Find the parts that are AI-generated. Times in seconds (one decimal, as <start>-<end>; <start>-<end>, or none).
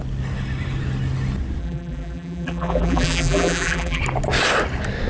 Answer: 1.6-4.0